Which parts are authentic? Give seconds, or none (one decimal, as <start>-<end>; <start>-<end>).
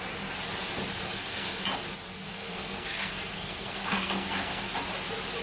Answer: 0.0-0.9; 1.6-2.3; 4.7-5.4